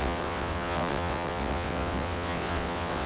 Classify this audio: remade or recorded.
remade